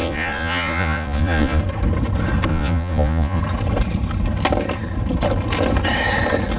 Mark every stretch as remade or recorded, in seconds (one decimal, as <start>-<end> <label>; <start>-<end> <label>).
0.0-1.6 remade; 1.6-2.5 recorded; 2.5-3.4 remade; 3.4-6.6 recorded